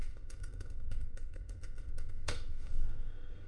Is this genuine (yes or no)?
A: no